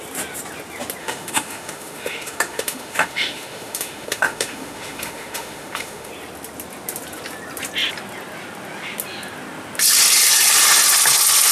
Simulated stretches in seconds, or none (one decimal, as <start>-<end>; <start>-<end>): 1.0-6.1